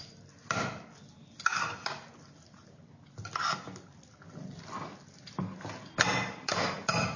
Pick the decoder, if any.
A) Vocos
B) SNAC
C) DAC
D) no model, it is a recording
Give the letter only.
D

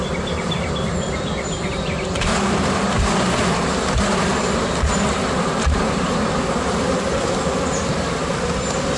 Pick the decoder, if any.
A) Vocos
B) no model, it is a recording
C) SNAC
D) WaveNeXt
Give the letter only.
B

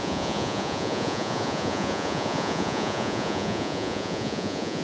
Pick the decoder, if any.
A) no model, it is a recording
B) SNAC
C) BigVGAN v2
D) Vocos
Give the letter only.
D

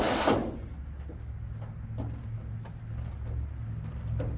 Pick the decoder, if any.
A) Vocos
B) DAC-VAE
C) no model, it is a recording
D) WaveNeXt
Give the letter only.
C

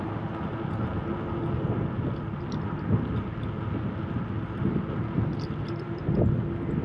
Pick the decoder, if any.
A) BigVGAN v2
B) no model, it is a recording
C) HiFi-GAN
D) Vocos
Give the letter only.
B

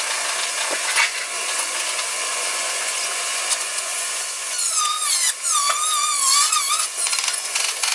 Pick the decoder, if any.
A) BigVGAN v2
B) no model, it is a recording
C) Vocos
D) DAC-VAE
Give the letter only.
C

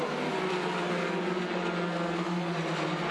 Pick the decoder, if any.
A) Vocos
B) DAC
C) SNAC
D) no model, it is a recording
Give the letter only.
D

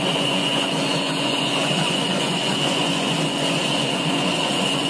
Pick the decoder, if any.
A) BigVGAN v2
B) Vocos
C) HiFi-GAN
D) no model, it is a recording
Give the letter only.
B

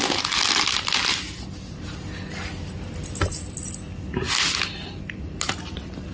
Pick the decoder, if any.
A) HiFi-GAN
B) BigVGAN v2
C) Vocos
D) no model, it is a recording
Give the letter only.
D